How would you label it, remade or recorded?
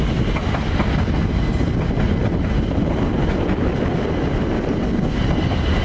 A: recorded